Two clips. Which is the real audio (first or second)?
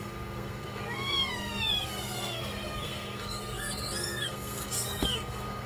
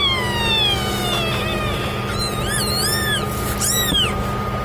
second